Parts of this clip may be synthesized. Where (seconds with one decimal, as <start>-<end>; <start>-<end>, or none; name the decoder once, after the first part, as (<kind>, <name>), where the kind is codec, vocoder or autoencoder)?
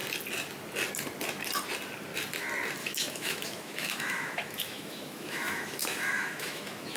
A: 2.8-7.0 (autoencoder, DAC-VAE)